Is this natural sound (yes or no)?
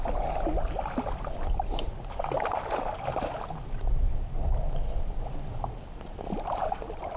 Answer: yes